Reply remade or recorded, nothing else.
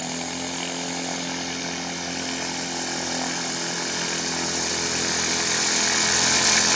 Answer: recorded